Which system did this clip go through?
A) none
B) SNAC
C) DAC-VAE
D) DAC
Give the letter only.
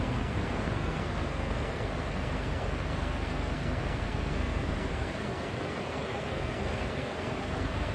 B